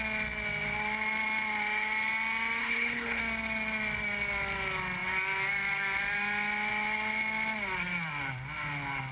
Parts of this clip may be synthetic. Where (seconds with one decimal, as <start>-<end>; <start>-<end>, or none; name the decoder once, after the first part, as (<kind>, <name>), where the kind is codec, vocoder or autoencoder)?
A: 2.6-3.2 (codec, HILCodec)